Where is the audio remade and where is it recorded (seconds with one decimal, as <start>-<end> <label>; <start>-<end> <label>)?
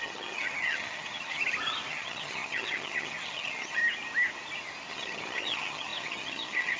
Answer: 0.0-1.4 remade; 1.4-1.9 recorded; 1.9-3.8 remade; 3.8-4.9 recorded; 4.9-6.8 remade